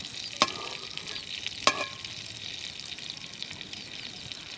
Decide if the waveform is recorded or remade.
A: recorded